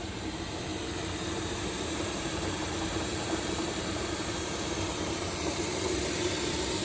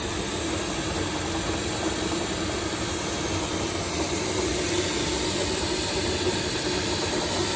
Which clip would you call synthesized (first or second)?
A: first